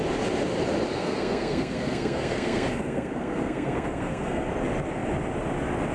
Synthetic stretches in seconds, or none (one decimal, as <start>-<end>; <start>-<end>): 1.0-4.5